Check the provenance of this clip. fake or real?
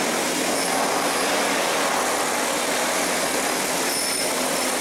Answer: real